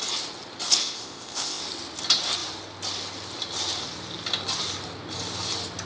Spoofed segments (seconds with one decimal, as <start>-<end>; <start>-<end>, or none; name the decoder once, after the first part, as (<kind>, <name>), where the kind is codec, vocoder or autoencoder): 0.8-1.6 (codec, ZipCodec)